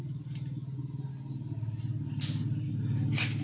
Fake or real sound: real